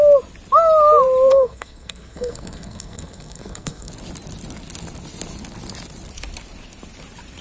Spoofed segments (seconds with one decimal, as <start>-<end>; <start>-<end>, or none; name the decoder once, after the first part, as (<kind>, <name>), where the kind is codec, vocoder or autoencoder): 1.3-3.9 (codec, SNAC)